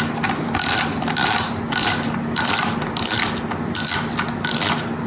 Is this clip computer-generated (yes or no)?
no